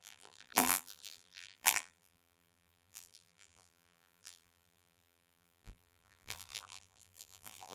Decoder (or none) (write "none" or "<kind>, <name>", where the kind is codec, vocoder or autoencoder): vocoder, BigVGAN v2